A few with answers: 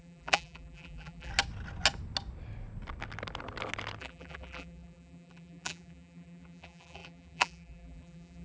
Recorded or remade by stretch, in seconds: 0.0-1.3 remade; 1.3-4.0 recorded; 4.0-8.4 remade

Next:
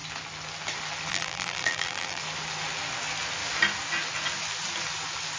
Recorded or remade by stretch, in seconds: 0.0-1.1 recorded; 1.1-2.2 remade; 2.2-5.4 recorded

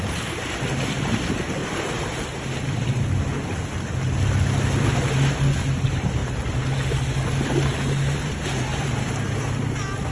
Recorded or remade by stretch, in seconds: 0.0-1.6 recorded; 1.6-3.0 remade; 3.0-8.7 recorded; 8.7-9.5 remade; 9.5-10.1 recorded

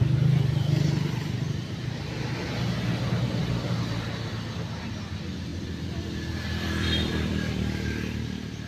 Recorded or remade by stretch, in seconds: 0.0-5.5 recorded; 5.5-8.7 remade

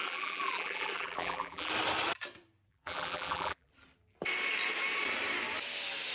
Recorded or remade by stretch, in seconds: 0.0-1.7 remade; 1.7-2.7 recorded; 2.7-3.7 remade; 3.7-6.1 recorded

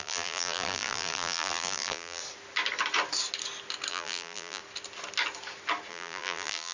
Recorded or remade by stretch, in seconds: 0.0-2.2 remade; 2.2-3.9 recorded; 3.9-4.6 remade; 4.6-5.9 recorded; 5.9-6.7 remade

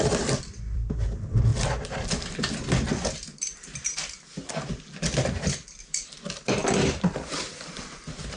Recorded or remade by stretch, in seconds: 0.0-1.5 remade; 1.5-5.7 recorded; 5.7-8.4 remade

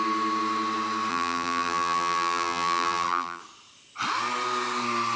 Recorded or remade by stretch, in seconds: 0.0-1.1 recorded; 1.1-3.4 remade; 3.4-5.2 recorded